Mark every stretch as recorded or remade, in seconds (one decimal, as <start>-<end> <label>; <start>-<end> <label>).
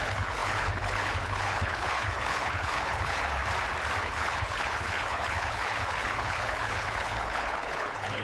0.0-3.4 remade; 3.4-4.0 recorded; 4.0-8.2 remade